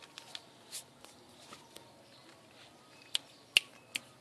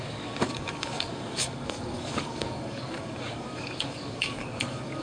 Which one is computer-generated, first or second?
second